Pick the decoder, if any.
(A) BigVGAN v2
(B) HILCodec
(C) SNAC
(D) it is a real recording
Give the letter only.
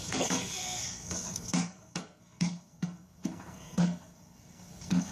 C